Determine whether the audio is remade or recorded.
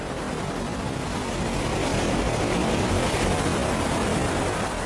recorded